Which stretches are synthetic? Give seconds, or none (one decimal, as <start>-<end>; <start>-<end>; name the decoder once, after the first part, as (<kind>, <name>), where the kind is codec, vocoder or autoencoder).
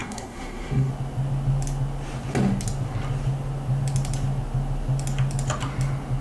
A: 0.0-0.9 (codec, SNAC)